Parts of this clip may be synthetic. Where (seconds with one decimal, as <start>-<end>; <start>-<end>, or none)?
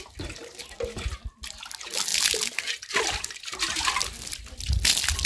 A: none